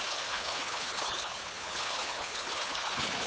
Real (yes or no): no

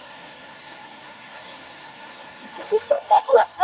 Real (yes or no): no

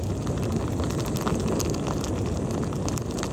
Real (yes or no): yes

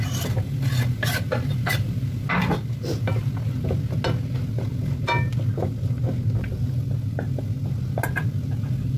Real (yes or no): yes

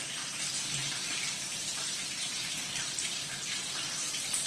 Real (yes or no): no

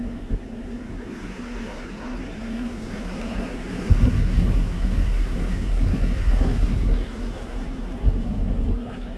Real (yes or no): no